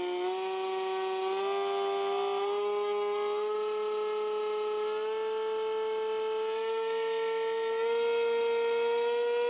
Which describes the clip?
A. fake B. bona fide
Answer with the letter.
B